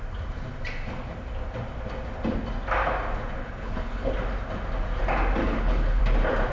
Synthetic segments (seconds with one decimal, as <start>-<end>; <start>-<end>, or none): 3.4-4.1; 5.4-6.0